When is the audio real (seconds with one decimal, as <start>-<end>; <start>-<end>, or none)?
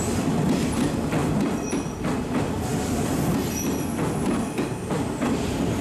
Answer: 0.0-5.8